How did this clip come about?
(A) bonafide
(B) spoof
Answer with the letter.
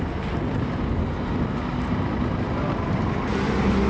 A